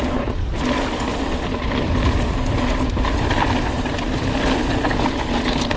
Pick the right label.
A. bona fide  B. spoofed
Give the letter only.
A